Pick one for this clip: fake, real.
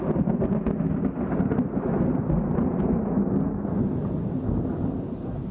real